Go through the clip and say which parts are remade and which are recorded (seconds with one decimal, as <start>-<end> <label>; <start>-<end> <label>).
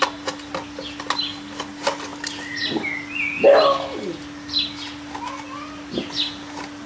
0.0-6.9 recorded